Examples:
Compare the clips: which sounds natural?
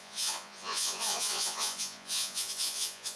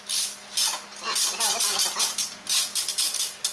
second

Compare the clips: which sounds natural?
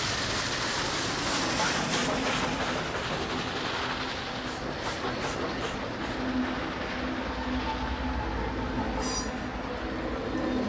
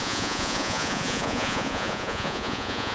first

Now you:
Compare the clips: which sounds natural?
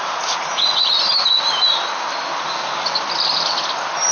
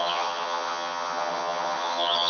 first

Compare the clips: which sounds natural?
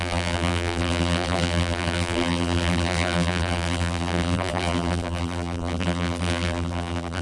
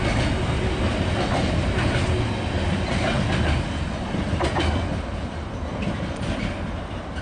second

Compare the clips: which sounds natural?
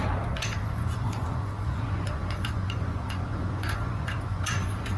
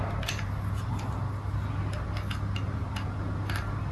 second